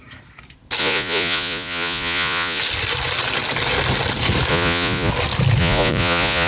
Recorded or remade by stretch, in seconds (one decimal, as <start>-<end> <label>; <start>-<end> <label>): 0.0-0.8 recorded; 0.8-2.6 remade; 2.6-4.5 recorded; 4.5-5.1 remade; 5.1-5.6 recorded; 5.6-6.5 remade